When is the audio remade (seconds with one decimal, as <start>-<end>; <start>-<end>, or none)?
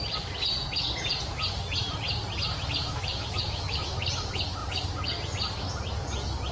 2.8-4.0